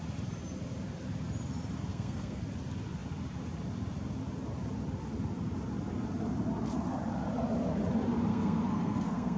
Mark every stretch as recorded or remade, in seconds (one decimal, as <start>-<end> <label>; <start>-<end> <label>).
0.0-1.9 recorded; 1.9-2.4 remade; 2.4-8.3 recorded; 8.3-9.4 remade